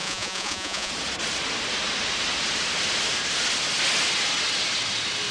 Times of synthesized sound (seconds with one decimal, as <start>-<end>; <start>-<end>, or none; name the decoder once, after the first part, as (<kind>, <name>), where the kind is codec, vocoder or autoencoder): 0.0-0.9 (vocoder, Vocos)